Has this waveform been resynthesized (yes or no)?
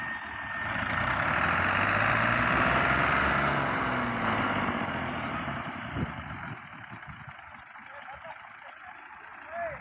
no